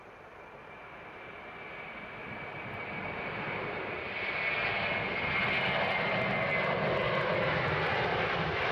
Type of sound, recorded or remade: recorded